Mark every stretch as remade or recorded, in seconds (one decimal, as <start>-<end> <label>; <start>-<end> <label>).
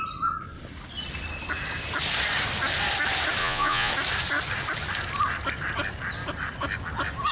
0.0-3.4 recorded; 3.4-3.9 remade; 3.9-7.3 recorded